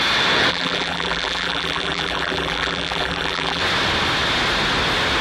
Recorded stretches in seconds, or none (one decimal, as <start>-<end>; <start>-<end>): 0.0-0.5; 3.6-5.2